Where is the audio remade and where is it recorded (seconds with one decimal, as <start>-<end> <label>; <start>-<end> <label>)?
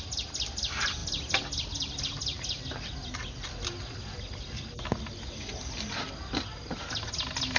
0.0-7.6 recorded